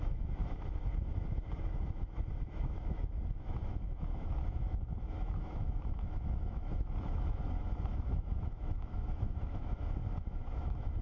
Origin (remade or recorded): remade